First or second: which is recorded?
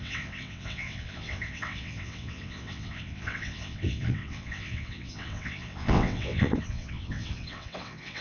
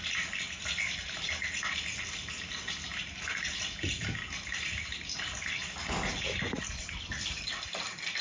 second